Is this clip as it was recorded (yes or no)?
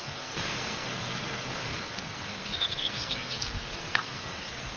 no